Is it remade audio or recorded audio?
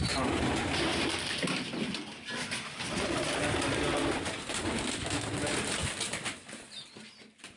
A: recorded